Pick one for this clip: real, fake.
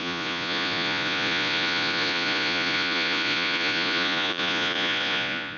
fake